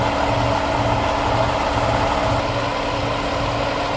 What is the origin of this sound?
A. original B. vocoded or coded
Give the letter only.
A